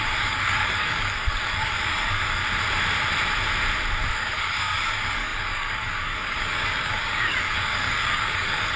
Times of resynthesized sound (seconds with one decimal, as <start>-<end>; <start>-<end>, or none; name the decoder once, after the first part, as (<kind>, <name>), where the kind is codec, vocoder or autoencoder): 0.0-2.4 (codec, DAC); 4.1-8.8

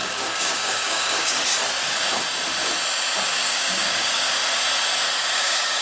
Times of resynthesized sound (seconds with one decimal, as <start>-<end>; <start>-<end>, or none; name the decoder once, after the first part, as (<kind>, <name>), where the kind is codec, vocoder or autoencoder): 0.0-1.5 (codec, DAC); 3.3-4.4; 5.2-5.8

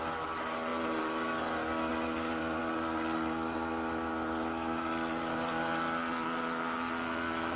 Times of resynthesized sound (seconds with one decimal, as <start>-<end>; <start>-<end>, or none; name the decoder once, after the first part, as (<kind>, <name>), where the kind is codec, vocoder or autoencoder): none

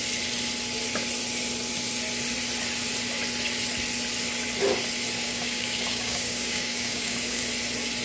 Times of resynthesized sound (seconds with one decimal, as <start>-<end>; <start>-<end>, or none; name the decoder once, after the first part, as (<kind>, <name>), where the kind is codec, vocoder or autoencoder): 5.2-7.4 (codec, DAC)

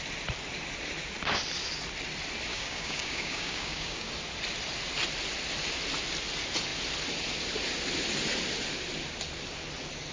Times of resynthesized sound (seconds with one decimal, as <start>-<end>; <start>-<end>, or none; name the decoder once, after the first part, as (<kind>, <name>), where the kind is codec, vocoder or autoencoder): 2.5-4.1 (codec, DAC)

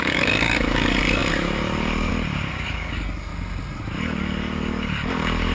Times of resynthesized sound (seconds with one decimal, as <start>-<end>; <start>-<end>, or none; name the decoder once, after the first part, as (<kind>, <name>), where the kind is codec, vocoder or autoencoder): 0.0-3.3 (codec, DAC); 4.0-5.5

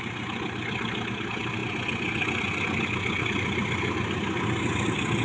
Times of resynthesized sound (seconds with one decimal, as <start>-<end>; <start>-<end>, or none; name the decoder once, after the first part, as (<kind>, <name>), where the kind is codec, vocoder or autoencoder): none